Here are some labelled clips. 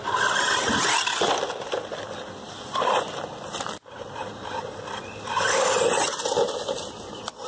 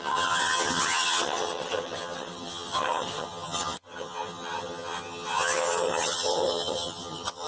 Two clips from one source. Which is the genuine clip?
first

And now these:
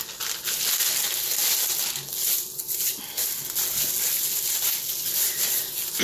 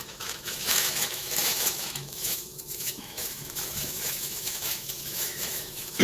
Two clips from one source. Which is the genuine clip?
first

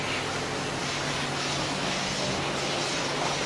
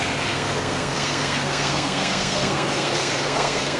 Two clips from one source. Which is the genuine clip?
first